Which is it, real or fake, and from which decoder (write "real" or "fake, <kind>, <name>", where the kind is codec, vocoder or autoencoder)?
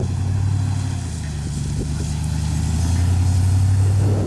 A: real